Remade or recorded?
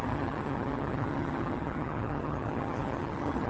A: remade